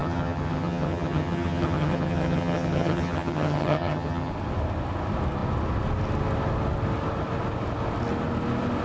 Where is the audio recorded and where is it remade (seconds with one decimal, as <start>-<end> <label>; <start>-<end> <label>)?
0.0-4.3 remade; 4.3-8.8 recorded